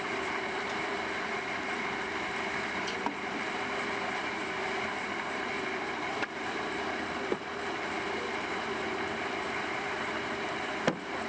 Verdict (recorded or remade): remade